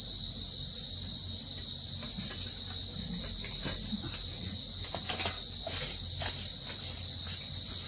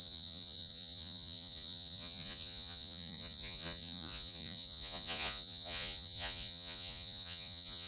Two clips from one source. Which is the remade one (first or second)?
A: second